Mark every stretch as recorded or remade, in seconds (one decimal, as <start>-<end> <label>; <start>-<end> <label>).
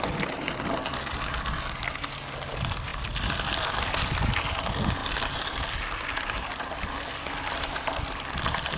0.0-2.9 recorded; 2.9-3.5 remade; 3.5-8.8 recorded